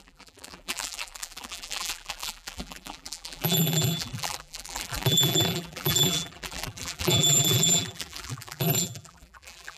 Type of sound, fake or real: fake